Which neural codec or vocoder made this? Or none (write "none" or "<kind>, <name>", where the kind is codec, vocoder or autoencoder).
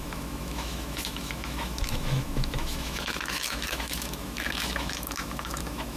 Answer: autoencoder, DAC-VAE